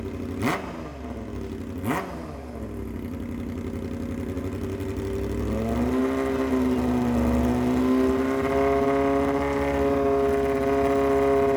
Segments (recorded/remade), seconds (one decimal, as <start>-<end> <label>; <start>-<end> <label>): 0.0-11.6 recorded